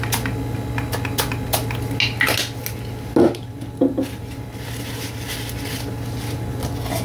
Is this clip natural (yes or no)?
yes